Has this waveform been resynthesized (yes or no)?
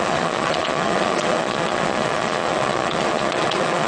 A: yes